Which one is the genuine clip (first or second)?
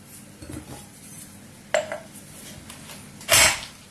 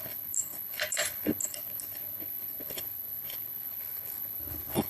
first